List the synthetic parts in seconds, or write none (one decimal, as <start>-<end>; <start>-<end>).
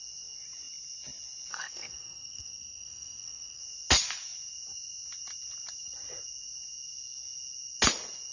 1.5-3.6